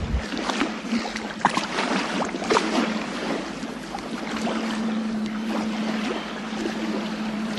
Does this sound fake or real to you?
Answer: fake